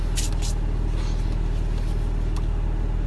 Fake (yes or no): no